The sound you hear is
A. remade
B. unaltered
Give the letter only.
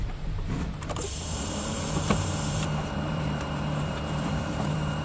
A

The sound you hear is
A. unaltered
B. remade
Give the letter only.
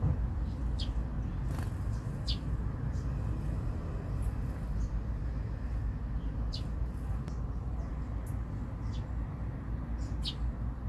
A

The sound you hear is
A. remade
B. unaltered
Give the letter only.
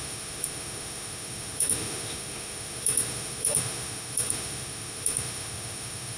A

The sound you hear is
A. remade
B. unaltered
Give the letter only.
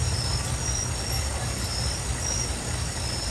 B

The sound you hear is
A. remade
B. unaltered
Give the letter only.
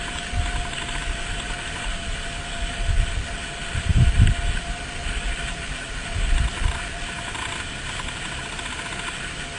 B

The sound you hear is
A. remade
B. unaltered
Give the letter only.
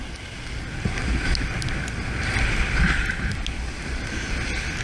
B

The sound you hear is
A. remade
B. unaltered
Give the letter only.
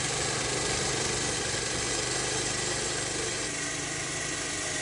B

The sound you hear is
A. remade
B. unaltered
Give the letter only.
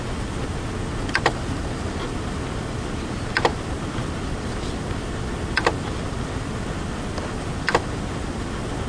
B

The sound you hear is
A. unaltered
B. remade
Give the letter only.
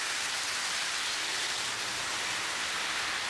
A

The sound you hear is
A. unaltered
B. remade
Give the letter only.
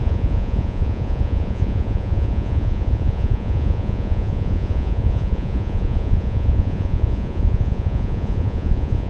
B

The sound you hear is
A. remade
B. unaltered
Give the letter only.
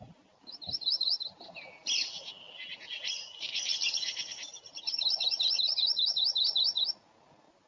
B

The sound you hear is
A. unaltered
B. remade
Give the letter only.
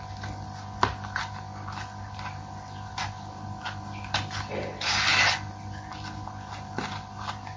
A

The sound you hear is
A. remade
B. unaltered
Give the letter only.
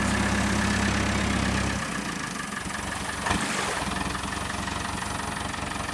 B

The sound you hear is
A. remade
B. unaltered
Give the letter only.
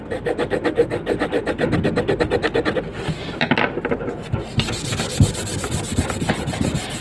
B